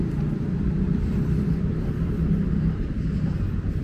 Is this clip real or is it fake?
fake